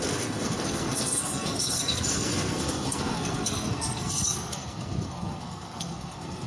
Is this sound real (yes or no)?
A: no